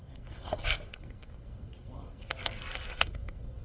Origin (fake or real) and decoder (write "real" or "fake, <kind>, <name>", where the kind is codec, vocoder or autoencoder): fake, codec, SNAC